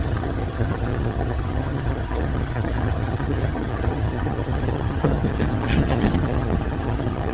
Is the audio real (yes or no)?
no